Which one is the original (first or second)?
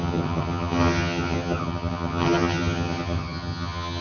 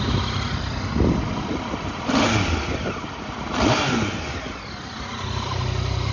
second